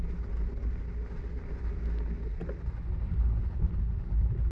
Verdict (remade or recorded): recorded